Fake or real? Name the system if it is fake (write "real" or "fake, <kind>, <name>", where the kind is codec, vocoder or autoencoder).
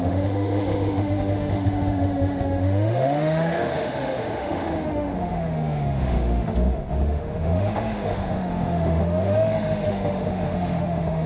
fake, autoencoder, DAC-VAE